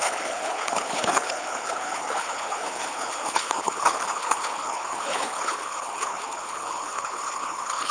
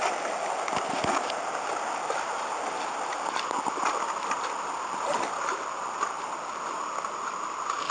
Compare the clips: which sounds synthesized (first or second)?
first